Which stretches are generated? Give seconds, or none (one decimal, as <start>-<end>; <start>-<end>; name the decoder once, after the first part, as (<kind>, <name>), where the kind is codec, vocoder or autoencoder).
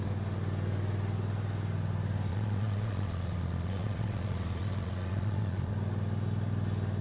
2.3-5.7 (vocoder, Vocos)